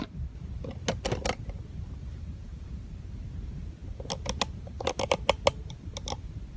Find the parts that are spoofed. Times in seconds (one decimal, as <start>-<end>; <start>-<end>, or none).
2.4-3.1